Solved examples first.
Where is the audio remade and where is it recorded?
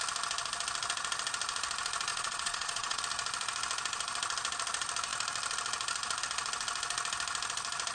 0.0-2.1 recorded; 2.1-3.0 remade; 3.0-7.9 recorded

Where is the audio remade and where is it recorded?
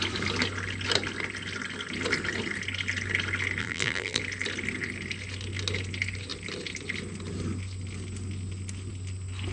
0.0-3.6 recorded; 3.6-4.2 remade; 4.2-9.5 recorded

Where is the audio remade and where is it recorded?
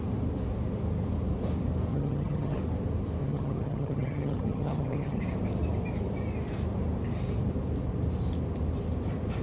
0.0-1.9 recorded; 1.9-2.6 remade; 2.6-3.2 recorded; 3.2-5.2 remade; 5.2-9.4 recorded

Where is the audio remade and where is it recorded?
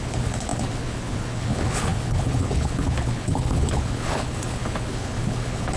0.0-5.8 remade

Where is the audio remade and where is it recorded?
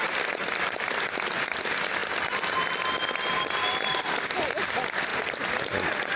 0.0-6.2 recorded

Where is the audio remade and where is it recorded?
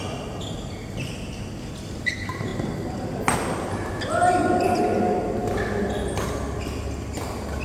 0.0-7.6 recorded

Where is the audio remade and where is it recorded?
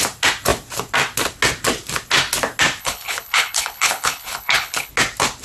0.0-2.8 recorded; 2.8-4.9 remade; 4.9-5.4 recorded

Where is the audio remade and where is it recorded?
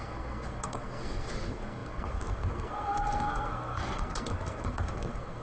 0.0-5.4 remade